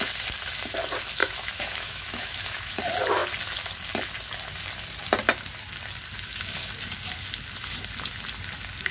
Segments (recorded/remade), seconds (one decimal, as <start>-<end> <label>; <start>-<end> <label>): 0.0-1.2 recorded; 1.2-2.8 remade; 2.8-8.9 recorded